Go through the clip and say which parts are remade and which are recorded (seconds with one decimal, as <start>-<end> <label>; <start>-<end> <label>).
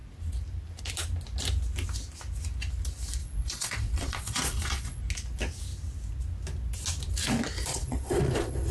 0.0-3.2 recorded; 3.2-5.0 remade; 5.0-7.7 recorded; 7.7-8.7 remade